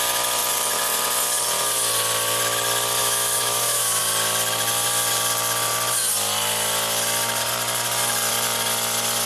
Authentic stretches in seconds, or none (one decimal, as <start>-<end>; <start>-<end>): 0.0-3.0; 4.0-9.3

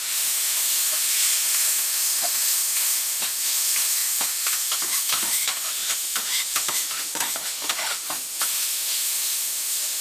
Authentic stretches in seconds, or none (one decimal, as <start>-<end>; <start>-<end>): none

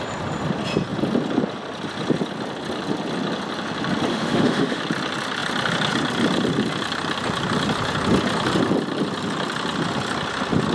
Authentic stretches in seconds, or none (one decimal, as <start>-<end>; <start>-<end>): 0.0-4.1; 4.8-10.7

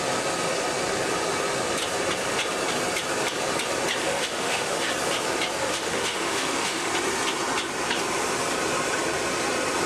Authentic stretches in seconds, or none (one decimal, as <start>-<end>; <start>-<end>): 0.0-4.0; 4.9-5.6; 6.9-9.9

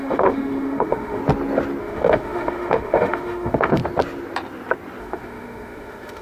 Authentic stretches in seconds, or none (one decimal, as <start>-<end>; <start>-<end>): 1.2-1.8; 3.8-5.0

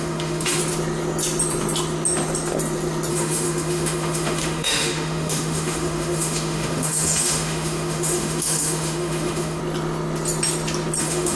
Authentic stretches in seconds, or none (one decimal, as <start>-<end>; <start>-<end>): 0.6-3.1; 9.6-11.0

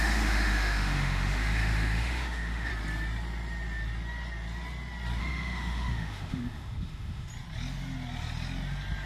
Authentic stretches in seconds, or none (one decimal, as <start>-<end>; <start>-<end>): 2.7-5.2; 7.3-9.1

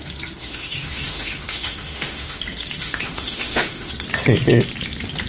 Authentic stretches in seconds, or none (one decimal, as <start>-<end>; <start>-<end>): 0.0-0.4; 2.4-2.8; 3.9-5.3